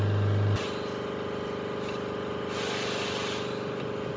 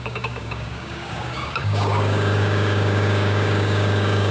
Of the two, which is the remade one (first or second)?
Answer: second